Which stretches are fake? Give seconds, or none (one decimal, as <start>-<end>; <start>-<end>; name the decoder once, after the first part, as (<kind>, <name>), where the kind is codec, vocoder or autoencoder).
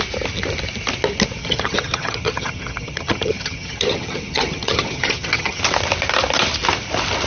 1.4-5.6 (vocoder, HiFi-GAN)